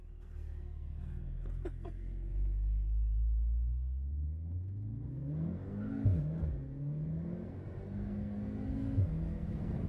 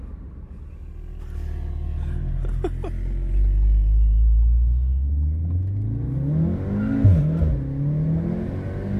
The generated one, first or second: first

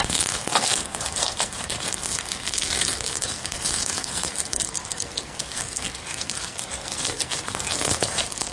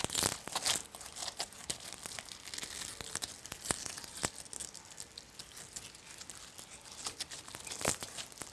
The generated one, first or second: first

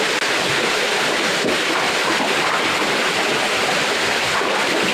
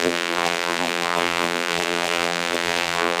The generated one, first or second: second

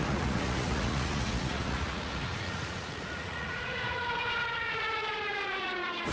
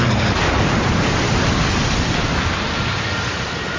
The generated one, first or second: first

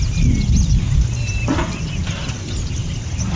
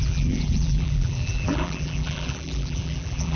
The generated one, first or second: second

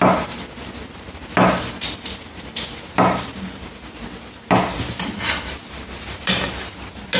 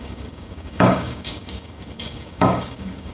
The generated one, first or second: second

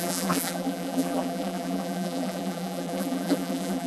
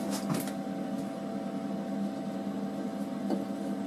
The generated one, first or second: first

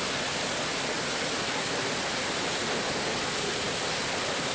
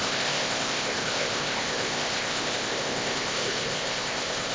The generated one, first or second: second